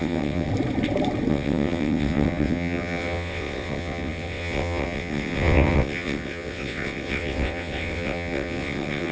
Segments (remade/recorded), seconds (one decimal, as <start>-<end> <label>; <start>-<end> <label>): 0.0-0.5 remade; 0.5-1.3 recorded; 1.3-9.1 remade